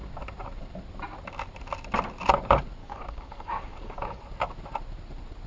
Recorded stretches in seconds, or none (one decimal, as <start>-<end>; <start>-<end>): 0.0-2.8; 4.2-5.5